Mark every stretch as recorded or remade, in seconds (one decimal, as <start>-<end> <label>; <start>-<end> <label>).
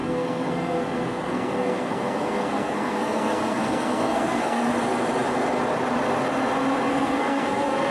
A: 0.0-4.7 remade; 4.7-6.9 recorded; 6.9-7.9 remade